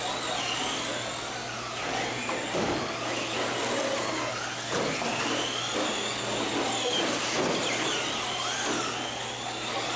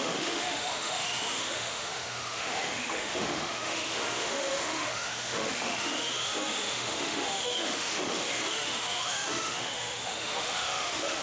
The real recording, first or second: first